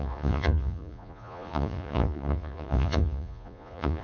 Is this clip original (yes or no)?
no